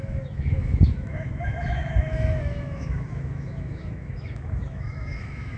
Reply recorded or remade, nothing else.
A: remade